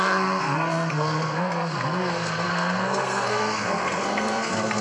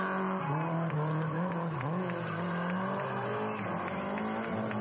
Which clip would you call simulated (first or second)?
first